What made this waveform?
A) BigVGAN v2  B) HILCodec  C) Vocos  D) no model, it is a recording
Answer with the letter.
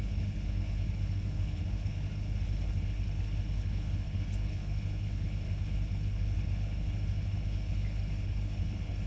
B